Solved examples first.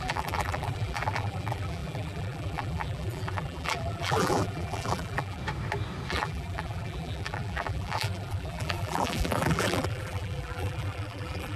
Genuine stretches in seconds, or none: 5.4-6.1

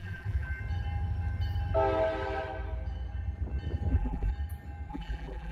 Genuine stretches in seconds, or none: 0.6-3.9; 4.3-4.9

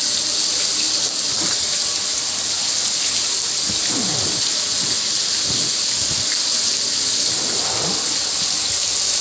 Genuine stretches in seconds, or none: 0.0-9.2

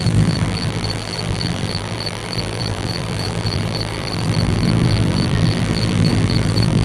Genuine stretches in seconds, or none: none

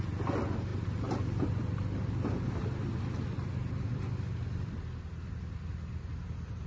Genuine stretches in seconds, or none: 0.0-0.7; 4.7-6.7

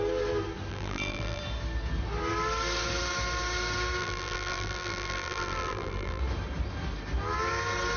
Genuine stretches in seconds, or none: 0.0-0.7; 1.4-4.0; 6.2-8.0

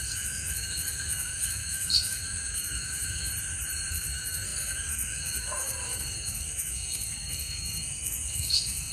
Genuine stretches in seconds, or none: 3.3-3.9

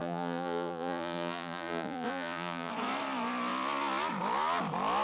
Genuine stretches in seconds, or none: 2.7-5.0